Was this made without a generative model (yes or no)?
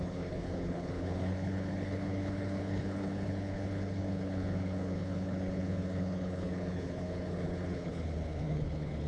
no